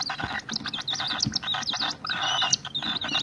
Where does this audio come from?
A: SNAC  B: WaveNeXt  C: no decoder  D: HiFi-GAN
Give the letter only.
C